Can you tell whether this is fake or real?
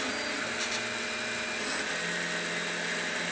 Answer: real